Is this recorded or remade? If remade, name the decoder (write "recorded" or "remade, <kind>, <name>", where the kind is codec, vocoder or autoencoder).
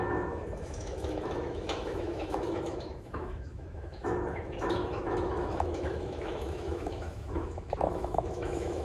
remade, autoencoder, DAC-VAE